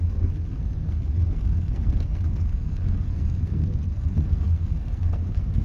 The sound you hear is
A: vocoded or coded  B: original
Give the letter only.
A